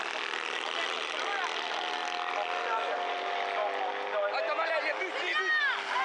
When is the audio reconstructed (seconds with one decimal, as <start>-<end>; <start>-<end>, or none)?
none